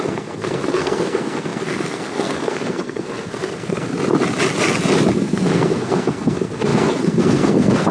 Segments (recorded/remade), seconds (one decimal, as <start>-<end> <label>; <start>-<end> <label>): 0.0-3.9 remade; 3.9-5.1 recorded; 5.1-7.9 remade